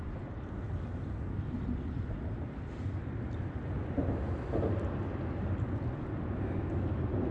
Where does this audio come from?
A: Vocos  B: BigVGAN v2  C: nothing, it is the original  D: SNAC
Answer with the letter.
C